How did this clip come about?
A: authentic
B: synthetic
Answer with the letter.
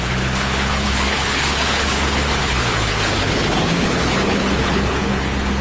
B